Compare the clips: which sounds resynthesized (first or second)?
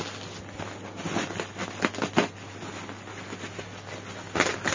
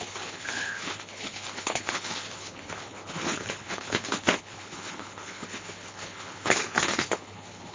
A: second